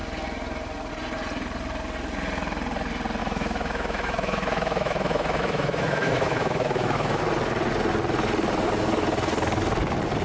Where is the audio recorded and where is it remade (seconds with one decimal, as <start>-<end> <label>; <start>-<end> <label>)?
0.0-3.2 recorded; 3.2-7.2 remade; 7.2-10.2 recorded

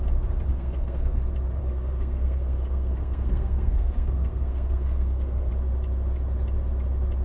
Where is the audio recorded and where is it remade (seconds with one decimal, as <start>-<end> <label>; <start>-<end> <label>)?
0.0-0.5 recorded; 0.5-1.2 remade; 1.2-1.6 recorded; 1.6-5.5 remade; 5.5-7.2 recorded